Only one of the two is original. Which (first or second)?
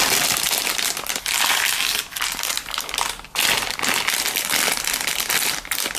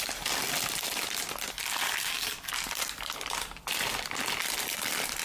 first